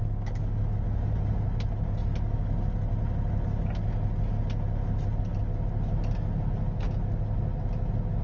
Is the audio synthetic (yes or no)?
no